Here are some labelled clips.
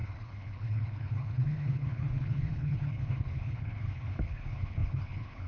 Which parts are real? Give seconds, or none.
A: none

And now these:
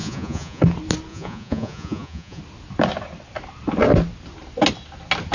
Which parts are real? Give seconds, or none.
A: 0.6-1.1; 2.4-5.3

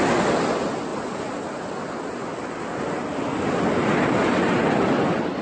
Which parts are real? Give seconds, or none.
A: 0.0-5.4

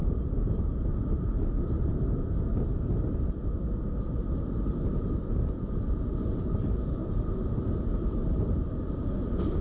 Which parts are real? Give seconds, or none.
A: 0.0-0.9; 1.9-5.5; 7.0-8.5

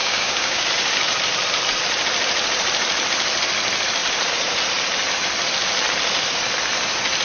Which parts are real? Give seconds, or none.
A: 0.7-7.2